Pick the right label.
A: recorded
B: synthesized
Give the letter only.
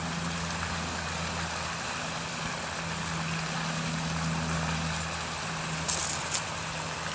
A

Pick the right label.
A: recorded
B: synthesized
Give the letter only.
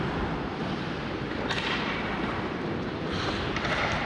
B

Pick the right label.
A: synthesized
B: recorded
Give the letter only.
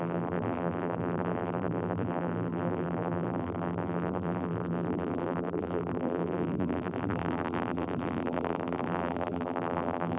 A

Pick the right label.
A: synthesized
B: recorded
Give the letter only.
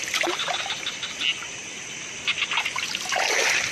B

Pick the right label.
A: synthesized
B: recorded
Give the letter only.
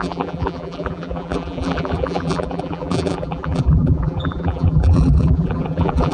A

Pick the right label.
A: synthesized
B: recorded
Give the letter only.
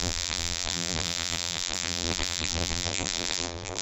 A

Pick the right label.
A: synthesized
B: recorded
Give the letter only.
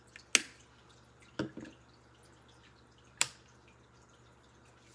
B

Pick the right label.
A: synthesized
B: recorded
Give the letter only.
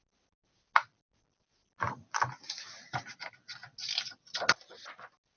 B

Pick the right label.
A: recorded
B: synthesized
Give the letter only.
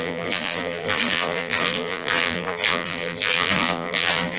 B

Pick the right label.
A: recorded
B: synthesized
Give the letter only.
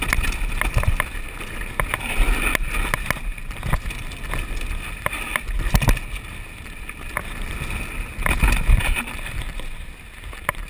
A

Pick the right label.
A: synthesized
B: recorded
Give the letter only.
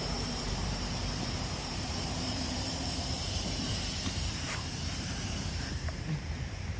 A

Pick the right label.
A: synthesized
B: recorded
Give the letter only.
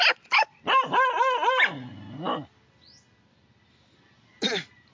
B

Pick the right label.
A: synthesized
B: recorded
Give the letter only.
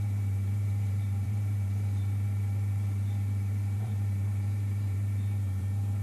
A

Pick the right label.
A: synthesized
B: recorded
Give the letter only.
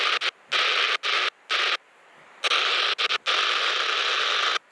B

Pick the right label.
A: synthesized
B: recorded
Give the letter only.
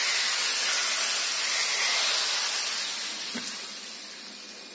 B